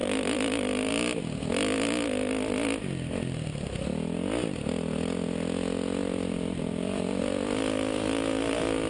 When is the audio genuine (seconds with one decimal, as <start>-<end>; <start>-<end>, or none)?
0.9-6.0; 7.2-8.9